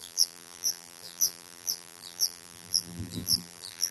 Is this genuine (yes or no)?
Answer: no